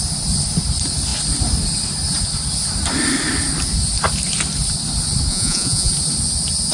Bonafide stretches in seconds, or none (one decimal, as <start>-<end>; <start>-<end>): 0.0-5.3; 5.9-6.7